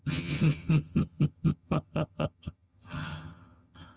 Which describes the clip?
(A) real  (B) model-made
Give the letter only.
B